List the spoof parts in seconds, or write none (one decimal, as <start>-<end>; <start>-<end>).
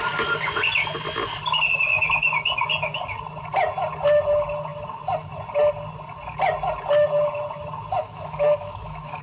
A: 8.0-9.2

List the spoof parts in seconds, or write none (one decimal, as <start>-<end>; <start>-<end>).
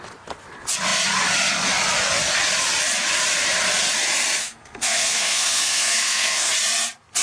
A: 4.4-6.5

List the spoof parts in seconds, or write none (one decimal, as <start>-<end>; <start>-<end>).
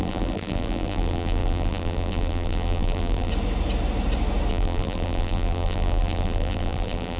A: 0.0-3.3; 4.5-7.2